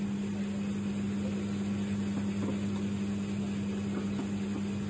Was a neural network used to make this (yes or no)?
no